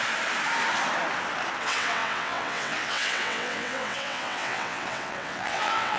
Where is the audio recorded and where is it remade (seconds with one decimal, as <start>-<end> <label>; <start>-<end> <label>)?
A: 0.0-1.6 recorded; 1.6-6.0 remade